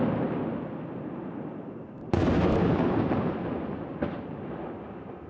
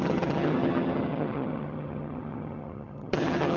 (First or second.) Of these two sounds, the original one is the first